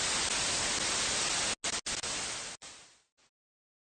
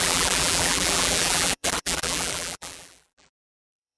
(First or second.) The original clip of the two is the first